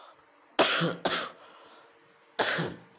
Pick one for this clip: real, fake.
real